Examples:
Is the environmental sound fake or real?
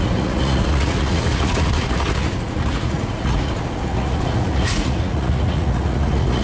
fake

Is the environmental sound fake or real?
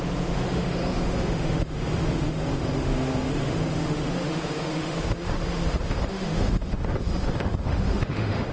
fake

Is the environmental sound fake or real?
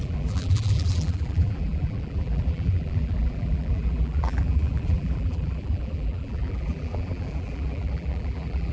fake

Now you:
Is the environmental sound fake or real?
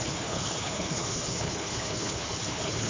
fake